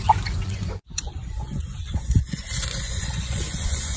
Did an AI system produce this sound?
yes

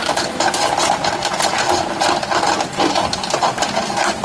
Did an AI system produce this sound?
no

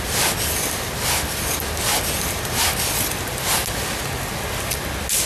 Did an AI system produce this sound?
no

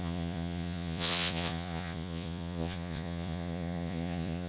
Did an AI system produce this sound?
yes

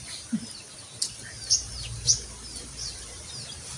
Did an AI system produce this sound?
no